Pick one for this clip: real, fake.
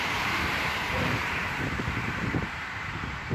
fake